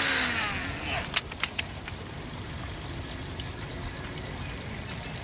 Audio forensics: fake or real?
real